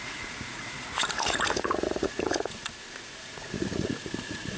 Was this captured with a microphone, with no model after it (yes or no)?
no